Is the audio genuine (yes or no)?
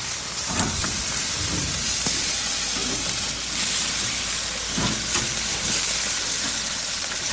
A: yes